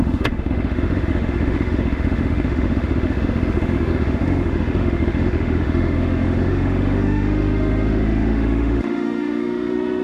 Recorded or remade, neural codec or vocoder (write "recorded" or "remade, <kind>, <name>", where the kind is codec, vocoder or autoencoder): remade, autoencoder, DAC-VAE